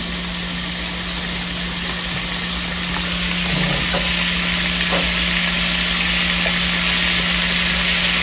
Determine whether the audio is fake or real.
real